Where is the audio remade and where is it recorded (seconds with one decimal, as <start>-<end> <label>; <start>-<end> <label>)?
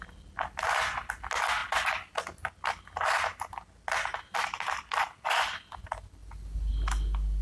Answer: 0.0-1.6 recorded; 1.6-2.1 remade; 2.1-7.4 recorded